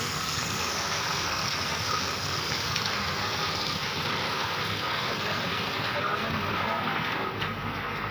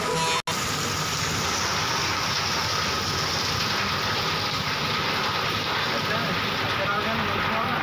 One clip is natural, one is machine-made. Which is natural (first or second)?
second